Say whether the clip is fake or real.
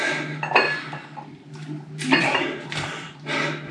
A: real